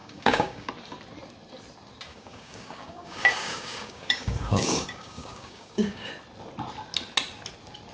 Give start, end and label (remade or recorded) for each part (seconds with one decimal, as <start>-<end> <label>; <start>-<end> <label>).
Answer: 0.0-0.7 remade; 0.7-2.1 recorded; 2.1-6.1 remade; 6.1-7.9 recorded